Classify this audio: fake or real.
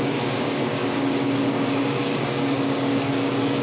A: fake